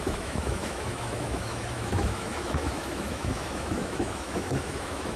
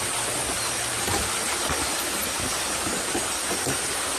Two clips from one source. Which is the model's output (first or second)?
first